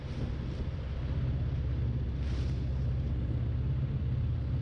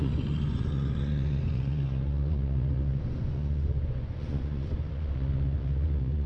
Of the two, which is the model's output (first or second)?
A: second